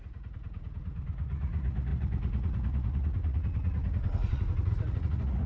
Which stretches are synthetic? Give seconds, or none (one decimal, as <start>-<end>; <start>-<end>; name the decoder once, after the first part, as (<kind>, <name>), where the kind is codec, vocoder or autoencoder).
0.0-5.5 (vocoder, Vocos)